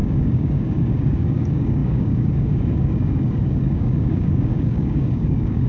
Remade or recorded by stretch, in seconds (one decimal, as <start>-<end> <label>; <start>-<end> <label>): 0.0-5.7 remade